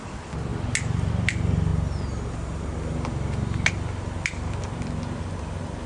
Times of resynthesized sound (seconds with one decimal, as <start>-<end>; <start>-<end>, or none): none